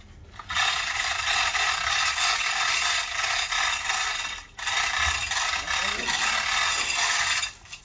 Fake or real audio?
real